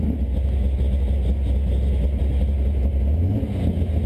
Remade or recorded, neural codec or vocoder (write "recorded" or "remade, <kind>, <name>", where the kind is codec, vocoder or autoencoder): recorded